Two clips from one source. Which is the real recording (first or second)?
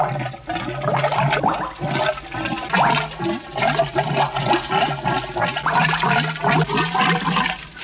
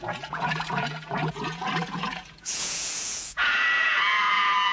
first